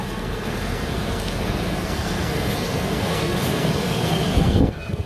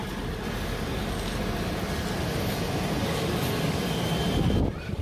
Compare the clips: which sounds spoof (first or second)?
first